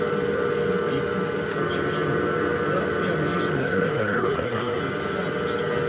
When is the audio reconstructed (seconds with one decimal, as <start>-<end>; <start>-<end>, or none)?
3.6-4.8